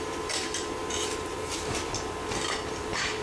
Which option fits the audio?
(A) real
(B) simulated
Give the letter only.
B